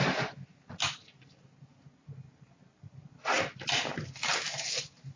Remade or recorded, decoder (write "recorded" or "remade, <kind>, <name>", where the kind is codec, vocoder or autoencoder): recorded